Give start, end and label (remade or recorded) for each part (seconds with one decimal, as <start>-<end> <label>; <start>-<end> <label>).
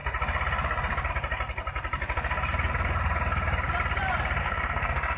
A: 0.0-4.4 recorded; 4.4-5.2 remade